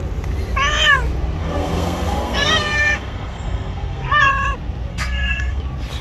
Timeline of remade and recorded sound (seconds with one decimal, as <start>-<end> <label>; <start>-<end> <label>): 0.0-1.4 recorded; 1.4-4.3 remade; 4.3-4.9 recorded; 4.9-5.6 remade; 5.6-6.0 recorded